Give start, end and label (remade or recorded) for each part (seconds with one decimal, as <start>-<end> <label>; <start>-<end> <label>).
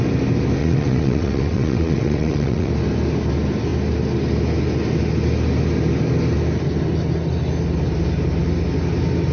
0.0-0.6 recorded; 0.6-2.7 remade; 2.7-9.3 recorded